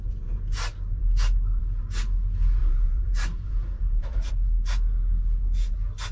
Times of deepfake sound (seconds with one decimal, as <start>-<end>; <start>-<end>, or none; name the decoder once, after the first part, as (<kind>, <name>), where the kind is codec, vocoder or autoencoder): 2.6-4.3 (vocoder, BigVGAN v2)